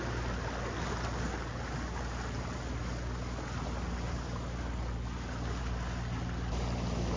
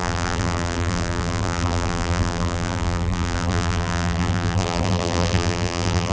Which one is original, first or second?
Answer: first